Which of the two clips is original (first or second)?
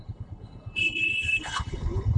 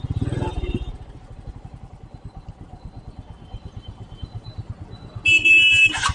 second